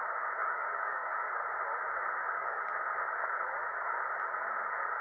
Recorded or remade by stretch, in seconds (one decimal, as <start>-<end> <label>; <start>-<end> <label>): 0.0-0.4 recorded; 0.4-1.4 remade; 1.4-2.2 recorded; 2.2-2.7 remade; 2.7-5.0 recorded